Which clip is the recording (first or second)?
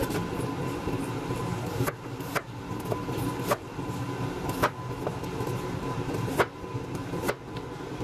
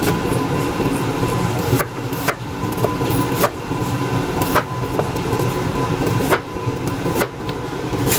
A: first